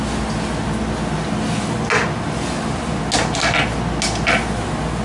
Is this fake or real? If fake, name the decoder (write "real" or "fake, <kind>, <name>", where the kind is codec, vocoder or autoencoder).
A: real